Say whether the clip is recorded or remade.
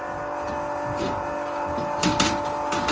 recorded